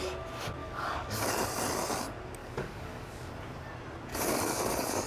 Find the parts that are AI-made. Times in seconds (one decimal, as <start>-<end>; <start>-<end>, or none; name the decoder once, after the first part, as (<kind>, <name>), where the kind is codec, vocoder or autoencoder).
0.6-1.3 (codec, DAC); 2.4-3.3; 4.1-5.1